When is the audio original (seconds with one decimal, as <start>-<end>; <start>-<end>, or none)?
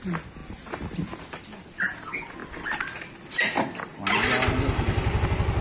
0.0-5.6